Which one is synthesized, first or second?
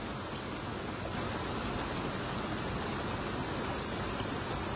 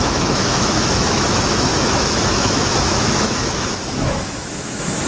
second